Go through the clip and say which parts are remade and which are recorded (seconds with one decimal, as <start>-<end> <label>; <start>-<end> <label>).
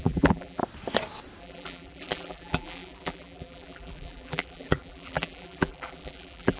0.0-0.6 remade; 0.6-1.4 recorded; 1.4-6.6 remade